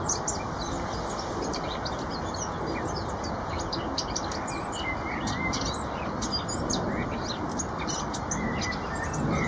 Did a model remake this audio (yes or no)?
no